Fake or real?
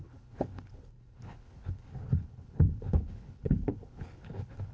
fake